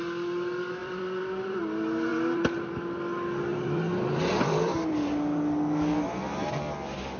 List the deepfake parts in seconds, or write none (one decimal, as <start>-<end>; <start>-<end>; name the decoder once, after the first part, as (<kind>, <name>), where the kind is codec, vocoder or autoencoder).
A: 0.8-1.6 (vocoder, BigVGAN v2); 2.1-2.7; 3.5-4.9